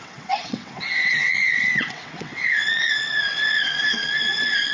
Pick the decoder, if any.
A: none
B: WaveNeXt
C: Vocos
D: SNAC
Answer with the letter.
B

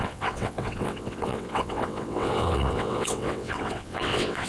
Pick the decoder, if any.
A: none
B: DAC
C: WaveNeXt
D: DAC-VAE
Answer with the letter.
C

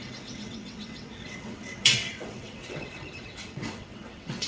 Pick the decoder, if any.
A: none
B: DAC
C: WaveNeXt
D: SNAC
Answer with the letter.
C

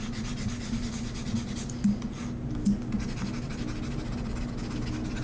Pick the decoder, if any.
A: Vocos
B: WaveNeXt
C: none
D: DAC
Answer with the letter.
C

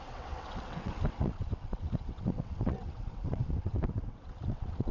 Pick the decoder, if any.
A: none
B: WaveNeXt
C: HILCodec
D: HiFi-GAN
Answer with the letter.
B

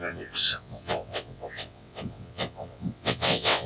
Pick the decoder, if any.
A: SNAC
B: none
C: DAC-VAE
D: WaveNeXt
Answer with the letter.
D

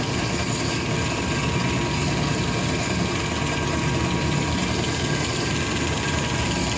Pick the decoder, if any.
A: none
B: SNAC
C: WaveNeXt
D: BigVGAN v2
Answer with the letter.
A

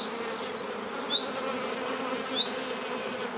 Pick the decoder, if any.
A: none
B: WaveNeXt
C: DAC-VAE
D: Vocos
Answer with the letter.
A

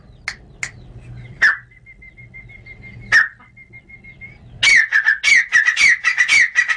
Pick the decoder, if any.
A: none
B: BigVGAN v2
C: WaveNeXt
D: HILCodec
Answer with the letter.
A